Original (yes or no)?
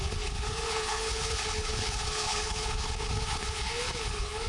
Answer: no